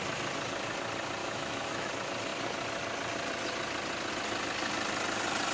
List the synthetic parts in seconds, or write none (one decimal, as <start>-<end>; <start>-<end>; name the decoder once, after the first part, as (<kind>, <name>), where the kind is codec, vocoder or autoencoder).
1.2-1.9 (autoencoder, DAC-VAE)